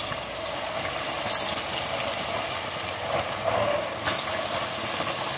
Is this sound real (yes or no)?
yes